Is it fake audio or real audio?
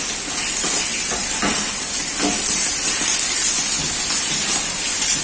real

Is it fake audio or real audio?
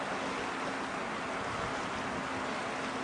real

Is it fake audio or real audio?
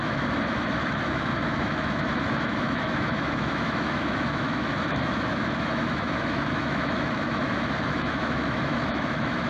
fake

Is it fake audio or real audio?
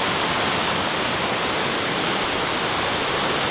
real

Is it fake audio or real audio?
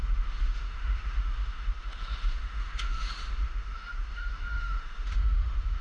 fake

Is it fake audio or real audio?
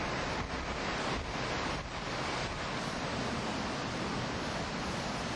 real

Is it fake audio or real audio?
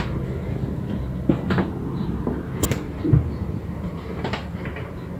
real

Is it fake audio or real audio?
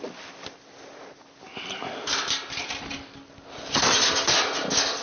real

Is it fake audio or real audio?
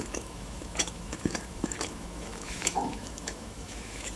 fake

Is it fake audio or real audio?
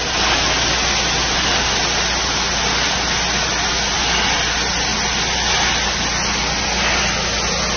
real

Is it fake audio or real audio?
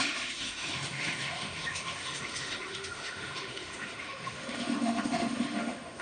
fake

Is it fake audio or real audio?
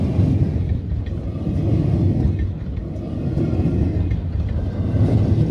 real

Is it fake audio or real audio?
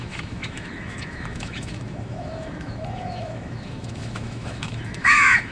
fake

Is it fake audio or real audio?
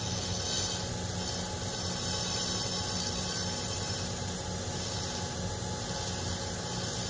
real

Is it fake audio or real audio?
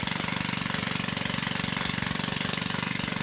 real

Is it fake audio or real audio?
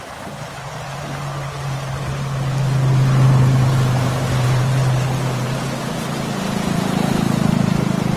real